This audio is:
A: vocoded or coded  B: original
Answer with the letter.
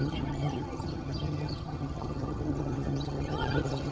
A